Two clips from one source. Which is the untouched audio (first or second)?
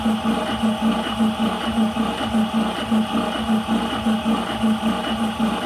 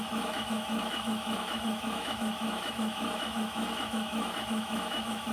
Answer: first